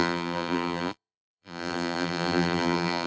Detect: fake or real fake